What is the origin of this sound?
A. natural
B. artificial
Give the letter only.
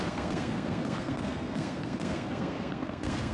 B